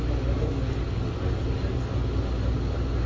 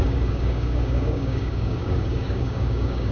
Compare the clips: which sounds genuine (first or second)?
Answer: first